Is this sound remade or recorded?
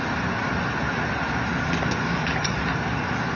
recorded